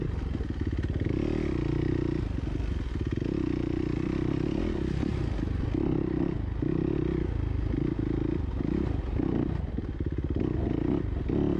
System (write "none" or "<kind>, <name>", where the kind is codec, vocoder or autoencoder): none